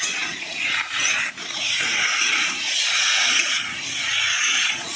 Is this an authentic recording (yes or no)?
no